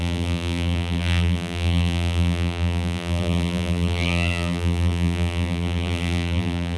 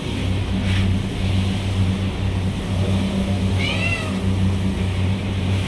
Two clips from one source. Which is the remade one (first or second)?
first